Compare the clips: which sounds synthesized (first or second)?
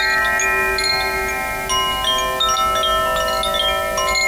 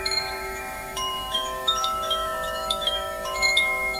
second